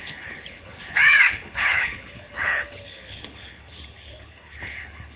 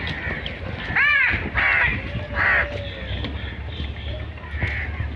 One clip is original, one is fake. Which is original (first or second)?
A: second